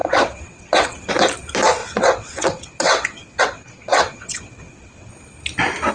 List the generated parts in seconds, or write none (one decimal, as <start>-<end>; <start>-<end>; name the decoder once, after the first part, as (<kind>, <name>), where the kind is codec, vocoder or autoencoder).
0.0-1.1 (vocoder, WaveNeXt); 1.8-5.1